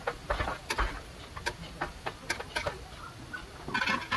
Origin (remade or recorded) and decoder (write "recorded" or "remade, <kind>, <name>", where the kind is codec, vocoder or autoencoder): recorded